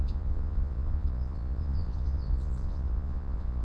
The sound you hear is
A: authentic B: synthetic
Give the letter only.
B